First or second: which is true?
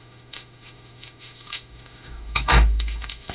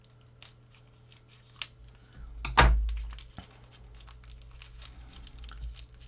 second